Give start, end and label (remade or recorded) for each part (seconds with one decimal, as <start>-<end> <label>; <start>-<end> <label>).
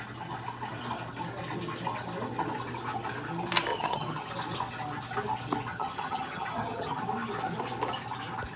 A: 0.0-3.7 recorded; 3.7-4.3 remade; 4.3-5.7 recorded; 5.7-7.0 remade; 7.0-8.6 recorded